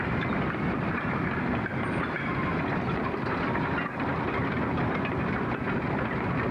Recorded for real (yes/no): yes